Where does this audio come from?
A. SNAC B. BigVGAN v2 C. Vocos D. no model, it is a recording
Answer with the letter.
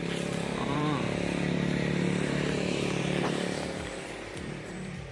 B